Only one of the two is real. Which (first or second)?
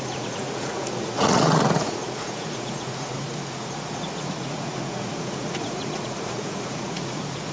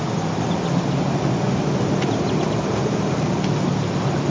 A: second